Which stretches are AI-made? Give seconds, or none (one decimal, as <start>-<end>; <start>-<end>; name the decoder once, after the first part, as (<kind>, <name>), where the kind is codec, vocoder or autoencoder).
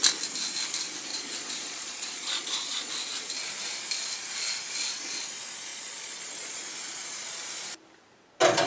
1.1-2.9 (vocoder, Vocos); 5.7-6.7